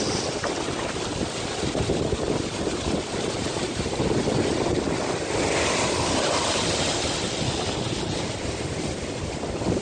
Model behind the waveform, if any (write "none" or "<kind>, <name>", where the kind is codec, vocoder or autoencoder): none